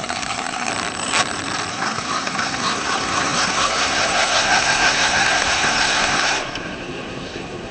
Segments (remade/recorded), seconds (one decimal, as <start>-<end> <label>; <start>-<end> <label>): 0.0-0.7 remade; 0.7-1.7 recorded; 1.7-7.7 remade